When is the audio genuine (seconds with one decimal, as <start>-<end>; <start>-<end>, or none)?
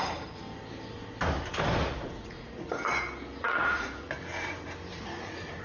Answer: 0.0-1.8; 2.7-3.4; 4.1-4.9